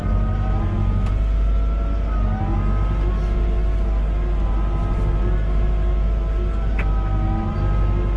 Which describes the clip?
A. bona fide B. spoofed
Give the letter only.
A